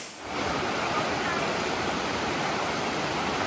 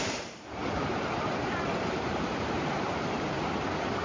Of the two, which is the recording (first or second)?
first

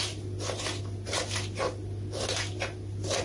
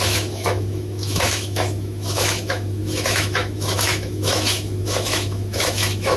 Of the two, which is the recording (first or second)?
first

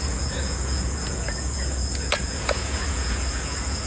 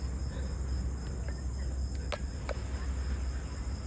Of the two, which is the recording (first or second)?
second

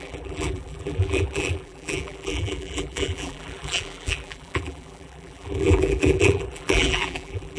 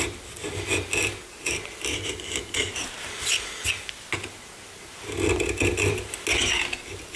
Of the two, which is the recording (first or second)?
second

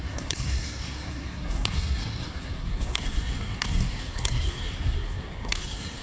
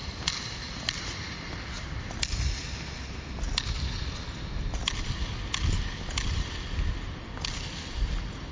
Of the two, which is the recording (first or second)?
second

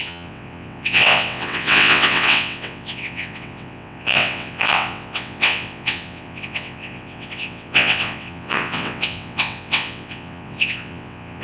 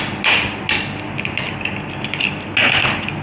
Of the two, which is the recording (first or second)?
second